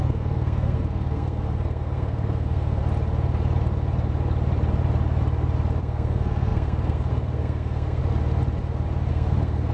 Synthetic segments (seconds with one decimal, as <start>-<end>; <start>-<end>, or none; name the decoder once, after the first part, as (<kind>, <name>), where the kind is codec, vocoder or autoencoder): 0.0-2.8 (codec, SNAC); 5.8-8.0; 9.1-9.7